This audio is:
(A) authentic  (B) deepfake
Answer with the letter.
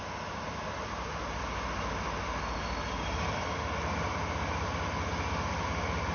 A